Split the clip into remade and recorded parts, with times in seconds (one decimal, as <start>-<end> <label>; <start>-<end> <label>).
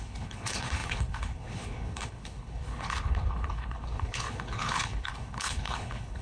0.0-6.2 remade